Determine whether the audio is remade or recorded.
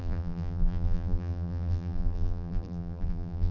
remade